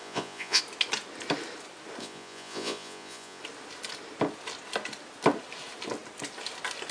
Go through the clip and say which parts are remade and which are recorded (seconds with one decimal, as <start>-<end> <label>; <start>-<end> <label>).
0.0-0.6 remade; 0.6-2.0 recorded; 2.0-3.4 remade; 3.4-6.9 recorded